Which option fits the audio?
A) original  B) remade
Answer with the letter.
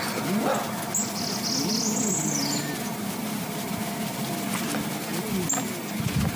A